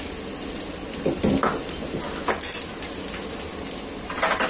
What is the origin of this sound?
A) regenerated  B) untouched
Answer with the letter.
B